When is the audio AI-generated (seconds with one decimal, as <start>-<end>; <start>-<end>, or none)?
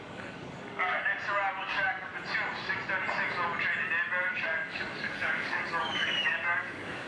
0.0-1.1; 1.6-2.1; 4.3-7.1